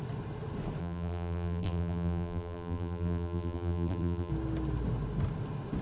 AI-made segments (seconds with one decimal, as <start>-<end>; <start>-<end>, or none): 0.8-4.3